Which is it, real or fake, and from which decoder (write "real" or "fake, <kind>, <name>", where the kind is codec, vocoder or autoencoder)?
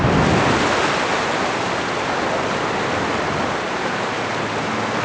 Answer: real